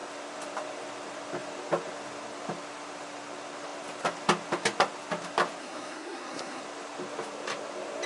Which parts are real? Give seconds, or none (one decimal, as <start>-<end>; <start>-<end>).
0.0-5.6; 6.6-8.1